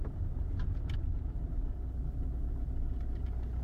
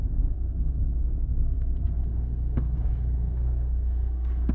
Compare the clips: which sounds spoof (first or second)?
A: second